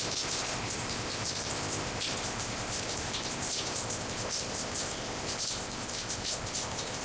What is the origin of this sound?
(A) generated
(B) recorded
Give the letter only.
A